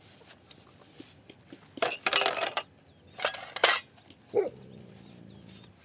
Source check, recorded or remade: recorded